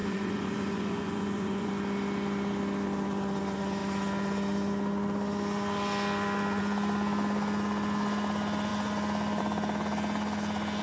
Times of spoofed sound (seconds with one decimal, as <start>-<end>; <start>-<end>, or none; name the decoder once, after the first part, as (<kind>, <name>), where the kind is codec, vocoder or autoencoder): 0.0-1.7 (vocoder, Vocos)